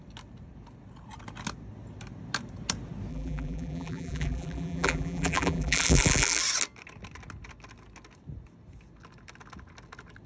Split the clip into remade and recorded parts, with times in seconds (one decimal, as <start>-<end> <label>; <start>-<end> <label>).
0.0-3.1 recorded; 3.1-6.4 remade; 6.4-10.3 recorded